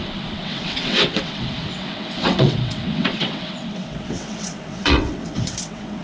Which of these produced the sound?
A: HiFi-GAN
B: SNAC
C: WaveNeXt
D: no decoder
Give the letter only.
C